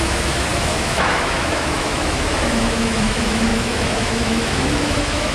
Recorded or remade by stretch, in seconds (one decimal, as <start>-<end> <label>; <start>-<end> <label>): 0.0-5.3 remade